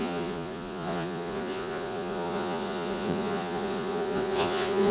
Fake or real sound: fake